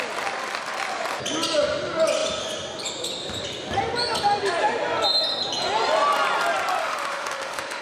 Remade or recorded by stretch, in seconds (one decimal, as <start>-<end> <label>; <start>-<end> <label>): 0.0-6.8 recorded; 6.8-7.8 remade